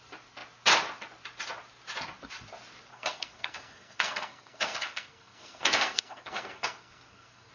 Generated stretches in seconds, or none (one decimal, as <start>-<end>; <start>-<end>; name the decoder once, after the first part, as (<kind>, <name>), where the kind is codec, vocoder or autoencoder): 2.9-7.5 (codec, SNAC)

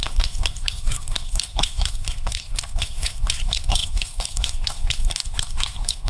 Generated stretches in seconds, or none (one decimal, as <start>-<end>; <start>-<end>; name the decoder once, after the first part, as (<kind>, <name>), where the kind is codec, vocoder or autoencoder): 0.0-6.1 (codec, SNAC)

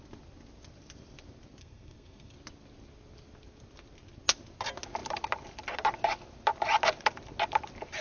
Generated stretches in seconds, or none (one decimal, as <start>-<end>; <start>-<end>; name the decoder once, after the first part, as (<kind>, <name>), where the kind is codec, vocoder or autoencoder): 1.6-2.3 (codec, SNAC)

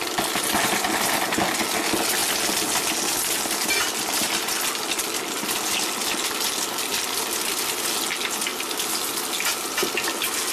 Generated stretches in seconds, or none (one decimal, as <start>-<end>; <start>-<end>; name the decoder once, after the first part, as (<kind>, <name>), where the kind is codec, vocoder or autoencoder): none

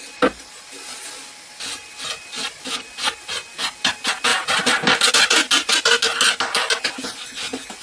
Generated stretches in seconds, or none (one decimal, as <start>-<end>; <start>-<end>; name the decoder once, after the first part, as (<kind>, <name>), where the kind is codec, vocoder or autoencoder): none

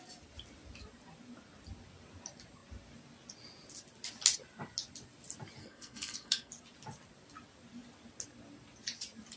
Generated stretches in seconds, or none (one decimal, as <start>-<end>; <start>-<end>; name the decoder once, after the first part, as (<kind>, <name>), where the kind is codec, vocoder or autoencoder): 5.6-6.5 (codec, SNAC)